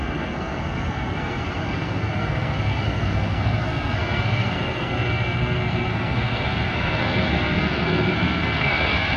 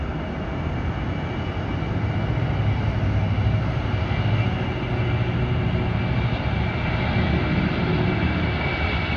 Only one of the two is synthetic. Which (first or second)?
first